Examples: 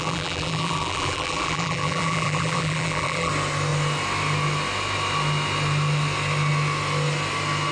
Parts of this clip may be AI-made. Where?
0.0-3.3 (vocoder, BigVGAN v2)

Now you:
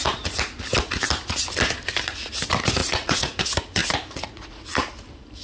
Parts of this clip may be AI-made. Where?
2.8-3.4 (vocoder, Vocos); 3.8-4.8

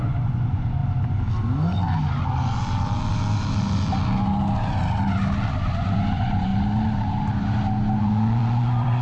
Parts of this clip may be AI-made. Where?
0.0-0.8 (vocoder, Vocos); 5.7-6.5; 8.0-9.0

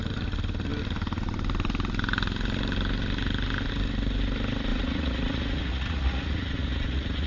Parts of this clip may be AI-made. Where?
4.7-7.3 (vocoder, Vocos)

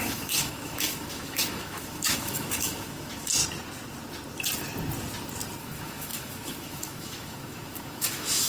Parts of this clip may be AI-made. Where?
0.0-3.4 (autoencoder, DAC-VAE); 5.6-8.5